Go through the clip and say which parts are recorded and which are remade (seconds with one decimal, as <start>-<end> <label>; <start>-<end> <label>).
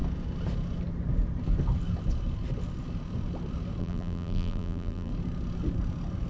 0.0-3.8 recorded; 3.8-5.1 remade; 5.1-6.3 recorded